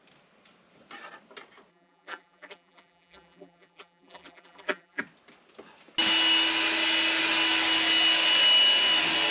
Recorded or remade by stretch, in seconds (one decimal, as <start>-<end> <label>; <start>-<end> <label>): 0.0-1.7 recorded; 1.7-5.0 remade; 5.0-9.3 recorded